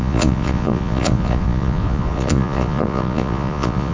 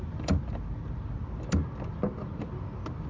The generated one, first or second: first